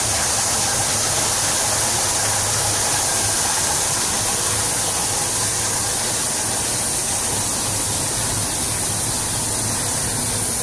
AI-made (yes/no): no